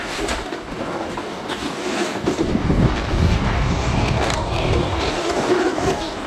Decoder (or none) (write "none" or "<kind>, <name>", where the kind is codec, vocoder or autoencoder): codec, DAC